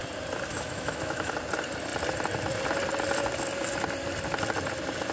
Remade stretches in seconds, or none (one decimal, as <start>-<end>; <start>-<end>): 0.5-1.3